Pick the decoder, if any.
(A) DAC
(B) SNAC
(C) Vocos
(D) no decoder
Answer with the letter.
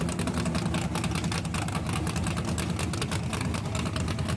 D